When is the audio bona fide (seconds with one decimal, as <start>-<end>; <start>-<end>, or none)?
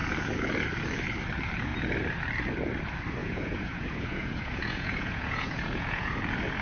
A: 0.0-3.2; 6.1-6.6